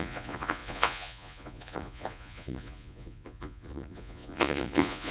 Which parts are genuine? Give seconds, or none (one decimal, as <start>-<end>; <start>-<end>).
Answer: none